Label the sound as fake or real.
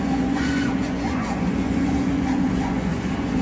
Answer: fake